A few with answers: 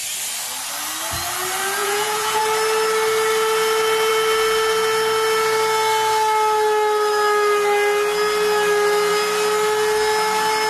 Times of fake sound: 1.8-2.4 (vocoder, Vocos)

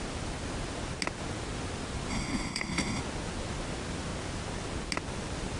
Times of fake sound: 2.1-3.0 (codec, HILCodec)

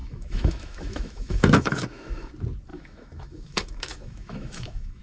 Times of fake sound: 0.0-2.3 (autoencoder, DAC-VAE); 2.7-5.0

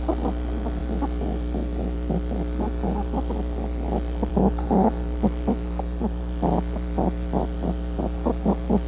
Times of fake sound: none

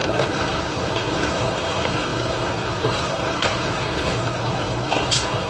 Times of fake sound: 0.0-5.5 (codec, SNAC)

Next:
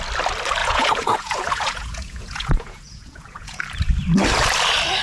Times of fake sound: 0.6-3.6 (vocoder, Vocos)